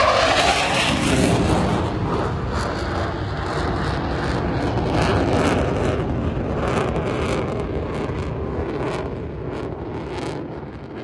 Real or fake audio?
real